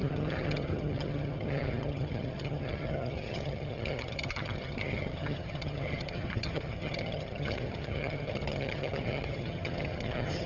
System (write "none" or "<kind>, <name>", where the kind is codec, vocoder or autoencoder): vocoder, HiFi-GAN